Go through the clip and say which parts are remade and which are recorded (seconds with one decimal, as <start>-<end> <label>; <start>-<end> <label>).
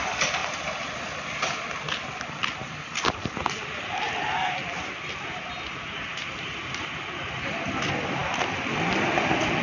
0.0-9.6 recorded